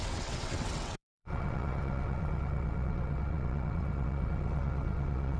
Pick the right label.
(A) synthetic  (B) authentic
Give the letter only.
A